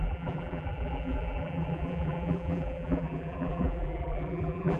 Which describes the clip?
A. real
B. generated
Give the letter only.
B